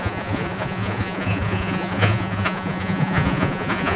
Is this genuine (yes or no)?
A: no